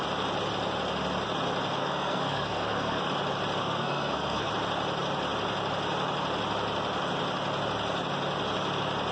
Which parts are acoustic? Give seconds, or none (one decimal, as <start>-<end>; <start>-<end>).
0.0-1.8; 3.0-3.6; 4.5-9.1